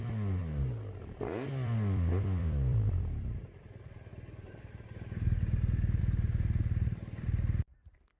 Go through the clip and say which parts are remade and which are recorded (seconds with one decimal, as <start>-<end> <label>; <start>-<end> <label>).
0.0-8.2 remade